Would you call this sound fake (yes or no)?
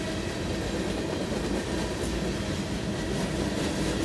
no